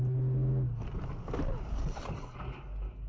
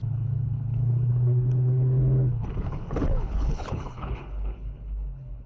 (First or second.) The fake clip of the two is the second